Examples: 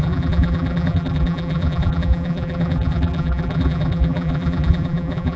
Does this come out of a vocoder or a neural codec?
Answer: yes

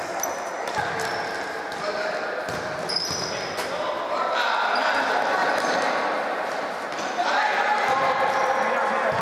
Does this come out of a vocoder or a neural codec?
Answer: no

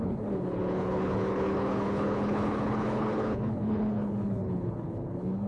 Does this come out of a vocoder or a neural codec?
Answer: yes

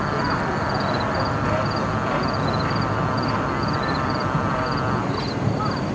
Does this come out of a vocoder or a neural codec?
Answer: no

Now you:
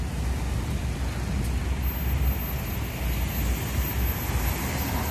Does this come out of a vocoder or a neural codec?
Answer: no